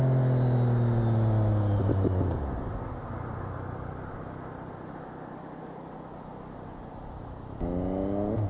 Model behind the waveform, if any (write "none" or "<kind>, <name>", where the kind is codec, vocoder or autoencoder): none